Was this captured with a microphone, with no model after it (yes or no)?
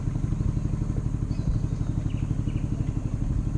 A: yes